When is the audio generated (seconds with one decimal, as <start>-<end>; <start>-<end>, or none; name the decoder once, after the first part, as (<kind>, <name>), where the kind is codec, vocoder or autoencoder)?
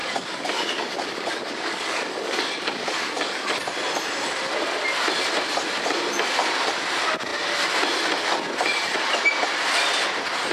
0.0-3.6 (codec, DAC)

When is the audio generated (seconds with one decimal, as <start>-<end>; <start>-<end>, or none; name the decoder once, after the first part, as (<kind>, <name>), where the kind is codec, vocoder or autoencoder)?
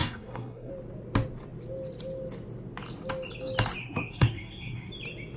0.0-0.7 (codec, SNAC); 3.8-4.9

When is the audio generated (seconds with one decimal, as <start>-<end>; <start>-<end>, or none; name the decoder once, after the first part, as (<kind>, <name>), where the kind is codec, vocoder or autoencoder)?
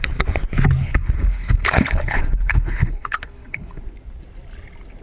0.8-3.8 (codec, HILCodec)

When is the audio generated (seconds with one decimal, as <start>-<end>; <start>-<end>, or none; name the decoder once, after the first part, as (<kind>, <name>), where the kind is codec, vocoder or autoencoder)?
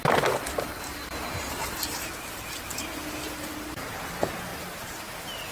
none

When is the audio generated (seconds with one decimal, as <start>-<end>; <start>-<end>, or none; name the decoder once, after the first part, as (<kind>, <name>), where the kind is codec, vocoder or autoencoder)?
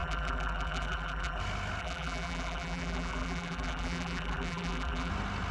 0.0-1.4 (vocoder, BigVGAN v2); 1.8-5.1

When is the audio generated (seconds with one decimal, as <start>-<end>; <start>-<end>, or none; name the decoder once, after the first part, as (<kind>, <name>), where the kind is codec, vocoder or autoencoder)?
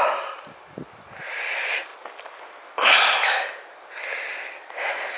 none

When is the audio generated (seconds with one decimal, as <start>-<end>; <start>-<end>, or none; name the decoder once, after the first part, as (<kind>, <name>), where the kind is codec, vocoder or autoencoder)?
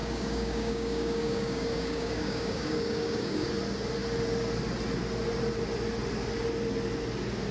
0.0-3.5 (codec, DAC)